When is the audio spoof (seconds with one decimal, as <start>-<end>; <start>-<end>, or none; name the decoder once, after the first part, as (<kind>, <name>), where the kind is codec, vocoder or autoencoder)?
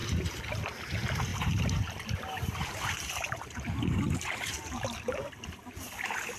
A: 0.0-0.6 (vocoder, BigVGAN v2); 1.3-5.1